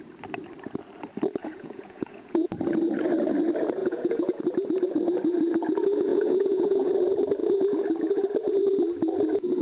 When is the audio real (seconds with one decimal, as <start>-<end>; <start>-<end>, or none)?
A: 0.0-1.4; 2.5-3.8; 4.4-6.1; 6.9-9.6